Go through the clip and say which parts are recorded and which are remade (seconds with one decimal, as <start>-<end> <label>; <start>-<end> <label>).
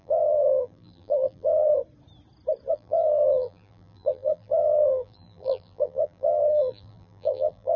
0.0-1.7 remade; 1.7-2.7 recorded; 2.7-7.8 remade